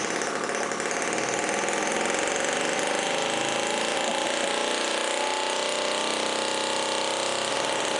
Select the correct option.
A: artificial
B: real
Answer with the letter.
B